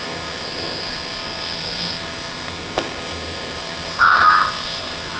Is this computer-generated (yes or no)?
yes